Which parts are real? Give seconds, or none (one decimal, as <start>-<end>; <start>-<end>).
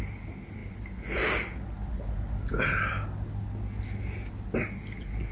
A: 0.0-5.3